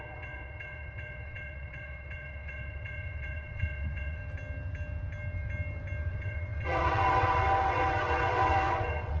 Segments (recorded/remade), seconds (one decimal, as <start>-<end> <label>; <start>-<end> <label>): 0.0-4.2 remade; 4.2-6.1 recorded; 6.1-9.2 remade